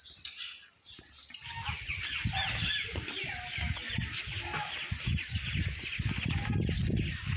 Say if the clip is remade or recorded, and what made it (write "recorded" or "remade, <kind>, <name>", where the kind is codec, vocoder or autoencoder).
recorded